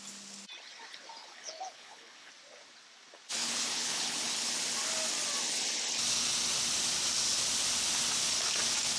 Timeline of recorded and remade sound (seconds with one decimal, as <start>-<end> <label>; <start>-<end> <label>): 0.0-1.2 recorded; 1.2-2.3 remade; 2.3-3.4 recorded; 3.4-4.5 remade; 4.5-9.0 recorded